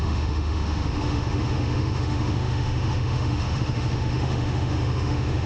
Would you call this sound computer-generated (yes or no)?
yes